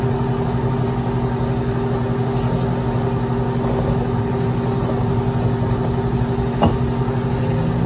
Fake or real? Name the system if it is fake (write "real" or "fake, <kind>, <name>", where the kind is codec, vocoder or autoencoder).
real